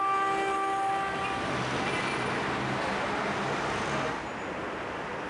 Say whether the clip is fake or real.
real